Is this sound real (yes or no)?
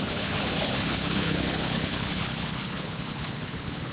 no